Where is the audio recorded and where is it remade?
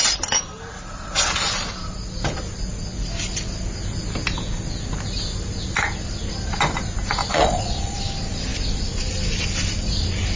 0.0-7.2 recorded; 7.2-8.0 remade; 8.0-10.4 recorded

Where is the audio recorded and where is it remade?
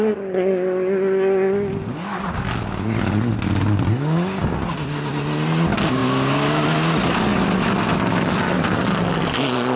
0.0-9.8 recorded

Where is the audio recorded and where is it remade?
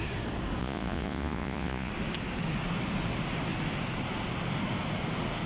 0.0-0.6 recorded; 0.6-1.9 remade; 1.9-5.5 recorded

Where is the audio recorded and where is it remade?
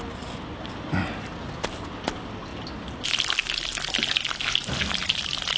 0.0-5.6 recorded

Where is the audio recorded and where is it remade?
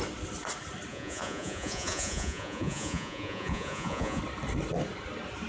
0.0-0.9 recorded; 0.9-4.2 remade; 4.2-5.5 recorded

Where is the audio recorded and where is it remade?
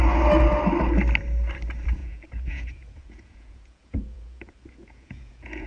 0.0-2.0 recorded; 2.0-5.7 remade